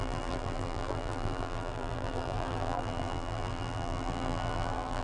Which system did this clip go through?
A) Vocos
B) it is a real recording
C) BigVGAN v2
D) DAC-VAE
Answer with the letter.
C